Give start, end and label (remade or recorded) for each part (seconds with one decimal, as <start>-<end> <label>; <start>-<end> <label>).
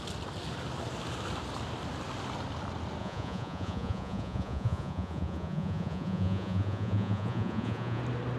0.0-3.0 recorded; 3.0-8.0 remade; 8.0-8.4 recorded